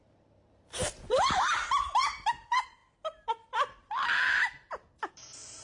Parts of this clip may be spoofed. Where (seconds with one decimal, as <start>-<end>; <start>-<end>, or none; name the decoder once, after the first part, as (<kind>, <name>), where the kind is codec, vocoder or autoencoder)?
0.0-2.8 (vocoder, BigVGAN v2); 5.1-5.6